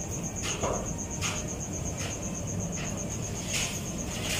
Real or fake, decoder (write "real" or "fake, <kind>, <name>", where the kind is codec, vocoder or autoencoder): real